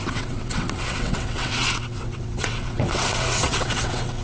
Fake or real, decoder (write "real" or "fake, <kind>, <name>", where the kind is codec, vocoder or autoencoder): fake, vocoder, WaveNeXt